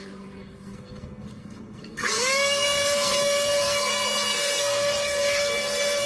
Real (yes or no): no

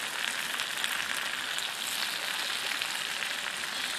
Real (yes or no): yes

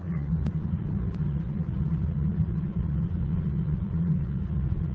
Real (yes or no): no